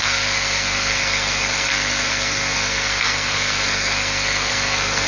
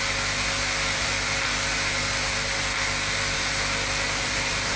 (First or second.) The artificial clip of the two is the first